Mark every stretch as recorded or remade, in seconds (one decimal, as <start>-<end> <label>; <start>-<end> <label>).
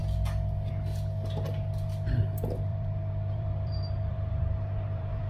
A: 0.0-2.7 recorded; 2.7-5.3 remade